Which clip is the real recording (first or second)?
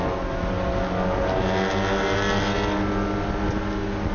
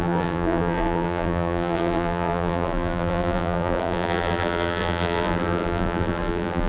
first